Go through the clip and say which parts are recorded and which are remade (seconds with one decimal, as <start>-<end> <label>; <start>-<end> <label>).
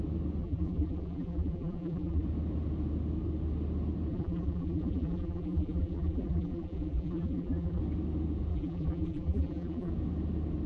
0.0-0.4 recorded; 0.4-2.2 remade; 2.2-4.1 recorded; 4.1-7.8 remade; 7.8-8.5 recorded; 8.5-9.9 remade; 9.9-10.7 recorded